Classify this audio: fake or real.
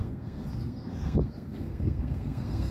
fake